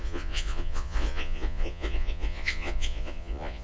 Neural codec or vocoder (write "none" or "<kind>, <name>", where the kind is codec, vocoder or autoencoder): vocoder, Vocos